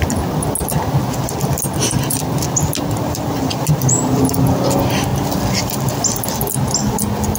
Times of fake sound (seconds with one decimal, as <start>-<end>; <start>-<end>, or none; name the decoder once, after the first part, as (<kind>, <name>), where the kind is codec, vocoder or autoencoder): none